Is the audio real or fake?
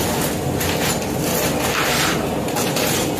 real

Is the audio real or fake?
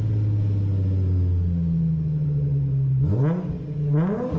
real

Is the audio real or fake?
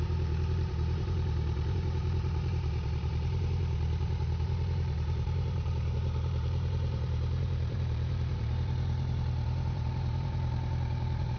fake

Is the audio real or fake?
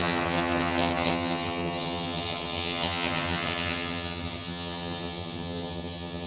fake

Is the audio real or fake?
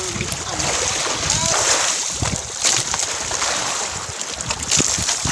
real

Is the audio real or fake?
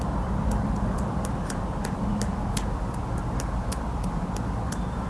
real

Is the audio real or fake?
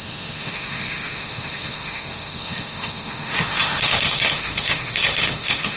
fake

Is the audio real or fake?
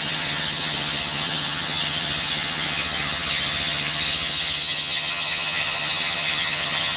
fake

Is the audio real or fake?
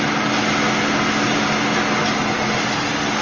real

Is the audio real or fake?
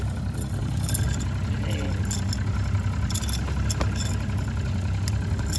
real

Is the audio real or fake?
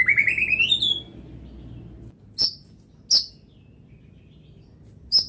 real